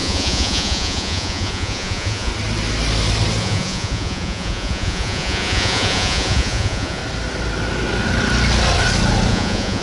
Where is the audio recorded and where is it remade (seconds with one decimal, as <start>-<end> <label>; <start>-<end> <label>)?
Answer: 0.0-2.3 remade; 2.3-3.4 recorded; 3.4-7.0 remade; 7.0-9.3 recorded; 9.3-9.8 remade